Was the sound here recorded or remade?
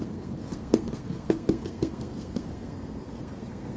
remade